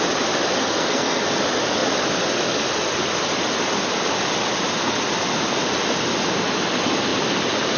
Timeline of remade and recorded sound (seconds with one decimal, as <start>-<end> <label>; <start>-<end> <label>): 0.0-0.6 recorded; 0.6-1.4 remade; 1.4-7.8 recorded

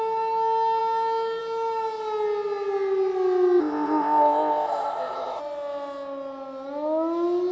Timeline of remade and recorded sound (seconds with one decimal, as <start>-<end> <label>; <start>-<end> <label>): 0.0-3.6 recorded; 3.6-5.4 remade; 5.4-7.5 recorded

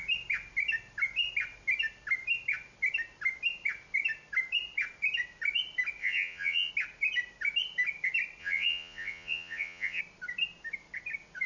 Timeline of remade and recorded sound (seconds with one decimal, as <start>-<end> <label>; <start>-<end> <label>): 0.0-6.0 recorded; 6.0-6.7 remade; 6.7-8.4 recorded; 8.4-10.0 remade; 10.0-11.5 recorded

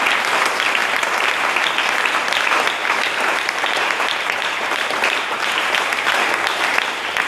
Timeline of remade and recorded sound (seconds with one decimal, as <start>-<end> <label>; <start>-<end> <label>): 0.0-2.8 recorded; 2.8-5.7 remade; 5.7-7.3 recorded

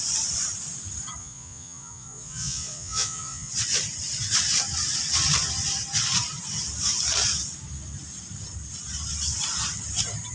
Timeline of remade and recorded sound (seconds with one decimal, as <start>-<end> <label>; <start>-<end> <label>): 0.0-1.2 recorded; 1.2-3.5 remade; 3.5-10.3 recorded

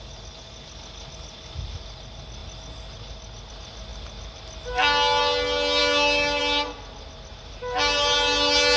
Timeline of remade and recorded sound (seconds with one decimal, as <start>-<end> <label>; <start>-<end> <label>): 0.0-5.8 recorded; 5.8-6.4 remade; 6.4-8.8 recorded